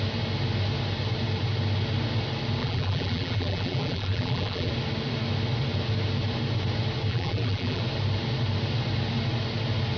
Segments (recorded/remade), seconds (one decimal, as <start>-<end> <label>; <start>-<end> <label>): 0.0-2.6 recorded; 2.6-4.7 remade; 4.7-7.1 recorded; 7.1-7.8 remade; 7.8-10.0 recorded